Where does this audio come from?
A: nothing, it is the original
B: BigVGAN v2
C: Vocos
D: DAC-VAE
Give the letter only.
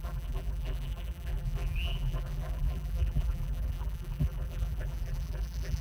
B